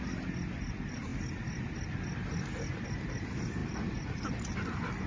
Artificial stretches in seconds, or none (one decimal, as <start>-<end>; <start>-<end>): none